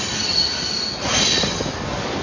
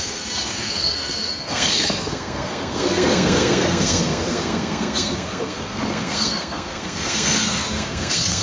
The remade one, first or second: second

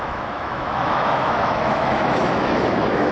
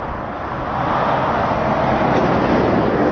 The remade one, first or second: first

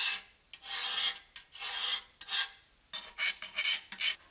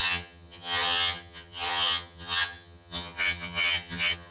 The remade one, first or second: second